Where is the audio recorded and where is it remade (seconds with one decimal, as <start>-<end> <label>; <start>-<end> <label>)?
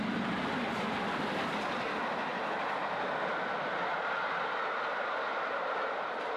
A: 0.0-6.4 recorded